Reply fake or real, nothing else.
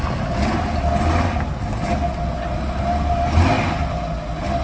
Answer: real